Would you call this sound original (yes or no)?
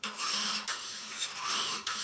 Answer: no